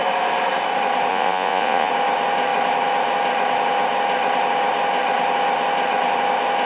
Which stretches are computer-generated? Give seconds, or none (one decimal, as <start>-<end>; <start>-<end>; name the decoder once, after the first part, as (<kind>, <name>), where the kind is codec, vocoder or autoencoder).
1.1-1.9 (vocoder, Vocos)